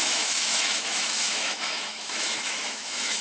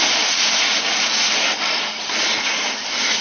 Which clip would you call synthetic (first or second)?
first